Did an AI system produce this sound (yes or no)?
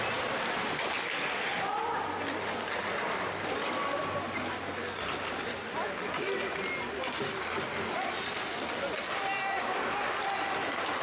no